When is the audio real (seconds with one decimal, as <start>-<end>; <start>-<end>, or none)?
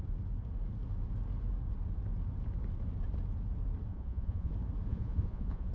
0.0-3.9; 4.5-4.9